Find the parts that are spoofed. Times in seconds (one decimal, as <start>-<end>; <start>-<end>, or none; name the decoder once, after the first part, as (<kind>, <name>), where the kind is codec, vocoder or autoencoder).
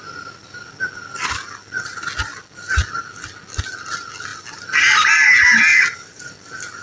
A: 5.7-6.3 (vocoder, BigVGAN v2)